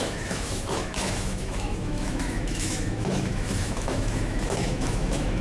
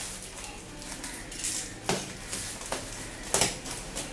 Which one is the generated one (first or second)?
first